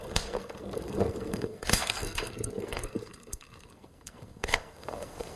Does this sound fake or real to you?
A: fake